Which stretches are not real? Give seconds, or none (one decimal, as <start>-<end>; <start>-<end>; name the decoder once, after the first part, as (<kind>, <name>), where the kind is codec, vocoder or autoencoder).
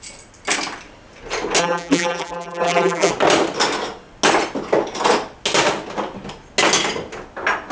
1.6-3.1 (vocoder, BigVGAN v2)